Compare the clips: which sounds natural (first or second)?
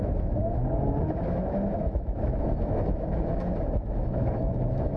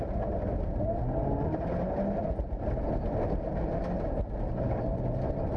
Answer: second